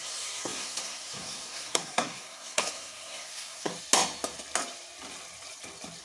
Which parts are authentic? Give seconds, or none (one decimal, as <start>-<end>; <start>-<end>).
3.7-6.0